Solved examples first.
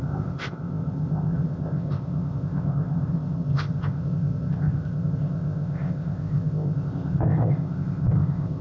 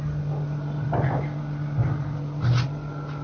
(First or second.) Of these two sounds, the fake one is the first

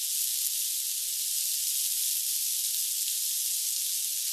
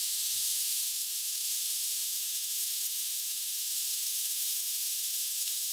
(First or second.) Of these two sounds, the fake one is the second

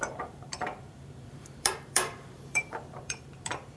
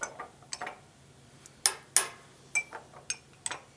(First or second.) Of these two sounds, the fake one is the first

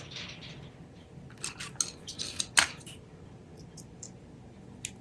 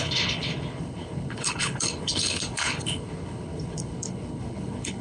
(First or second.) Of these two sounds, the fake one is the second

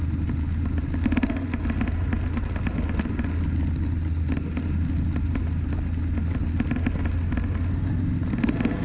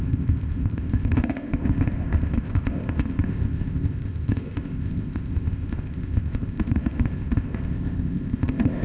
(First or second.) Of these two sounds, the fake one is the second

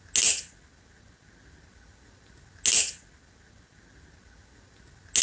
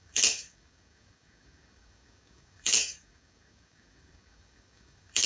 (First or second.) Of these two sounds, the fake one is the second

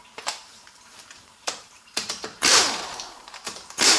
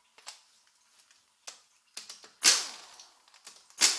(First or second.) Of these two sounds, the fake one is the first